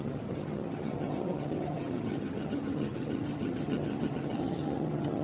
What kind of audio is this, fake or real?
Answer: fake